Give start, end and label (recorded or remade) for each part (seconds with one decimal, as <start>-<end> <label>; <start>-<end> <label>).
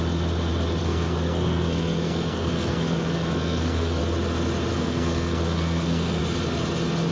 0.0-0.8 recorded; 0.8-4.0 remade; 4.0-4.7 recorded; 4.7-6.2 remade; 6.2-7.1 recorded